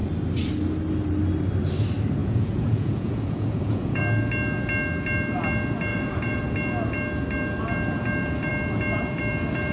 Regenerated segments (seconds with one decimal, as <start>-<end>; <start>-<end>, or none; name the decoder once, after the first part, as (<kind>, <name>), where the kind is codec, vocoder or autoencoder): 2.2-4.0 (vocoder, Vocos); 5.9-6.4